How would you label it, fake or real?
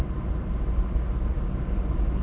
real